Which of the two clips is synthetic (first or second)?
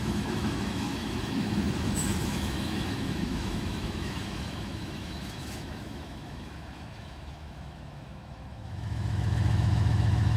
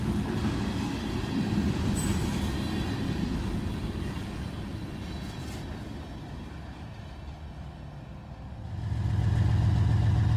first